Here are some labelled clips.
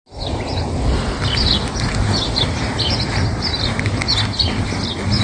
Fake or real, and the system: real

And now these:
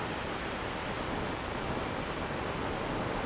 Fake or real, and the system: real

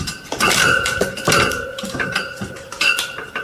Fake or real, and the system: fake, vocoder, BigVGAN v2